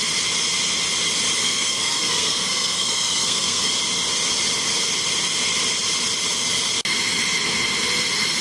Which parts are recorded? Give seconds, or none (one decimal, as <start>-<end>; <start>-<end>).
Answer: 0.0-1.4; 3.7-8.4